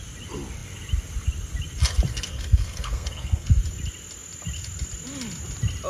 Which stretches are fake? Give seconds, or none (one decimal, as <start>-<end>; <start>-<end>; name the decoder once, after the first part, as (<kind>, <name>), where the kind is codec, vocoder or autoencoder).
2.1-3.6 (codec, SNAC)